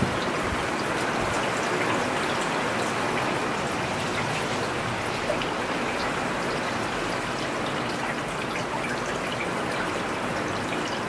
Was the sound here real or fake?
real